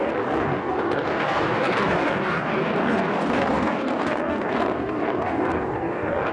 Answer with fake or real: fake